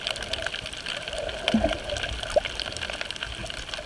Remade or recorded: recorded